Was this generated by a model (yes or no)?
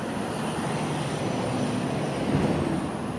no